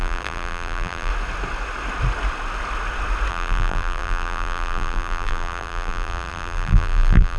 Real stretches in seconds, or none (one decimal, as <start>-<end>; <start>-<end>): 1.1-3.3